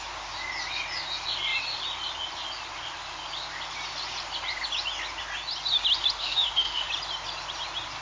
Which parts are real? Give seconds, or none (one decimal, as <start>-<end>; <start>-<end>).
0.0-6.2; 6.9-8.0